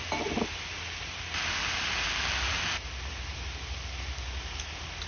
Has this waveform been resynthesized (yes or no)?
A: no